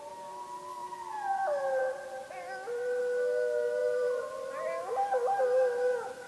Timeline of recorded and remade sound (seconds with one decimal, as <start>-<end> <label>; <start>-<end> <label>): 0.0-0.8 recorded; 0.8-1.8 remade; 1.8-2.2 recorded; 2.2-3.0 remade; 3.0-3.8 recorded; 3.8-5.4 remade; 5.4-6.3 recorded